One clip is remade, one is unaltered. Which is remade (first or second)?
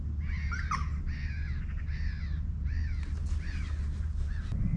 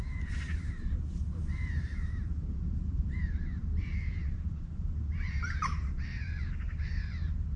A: second